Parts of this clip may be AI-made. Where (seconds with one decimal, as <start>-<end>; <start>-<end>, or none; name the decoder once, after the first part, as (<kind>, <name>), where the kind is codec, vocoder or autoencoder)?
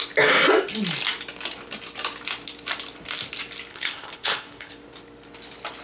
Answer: 3.7-4.7 (codec, HILCodec)